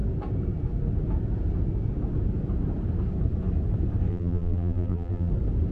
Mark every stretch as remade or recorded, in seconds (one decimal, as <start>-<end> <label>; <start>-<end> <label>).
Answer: 0.0-4.1 recorded; 4.1-5.3 remade; 5.3-5.7 recorded